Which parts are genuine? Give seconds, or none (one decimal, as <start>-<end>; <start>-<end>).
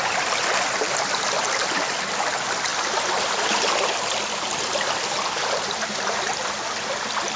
0.0-7.4